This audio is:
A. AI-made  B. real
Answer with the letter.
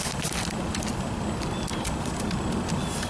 B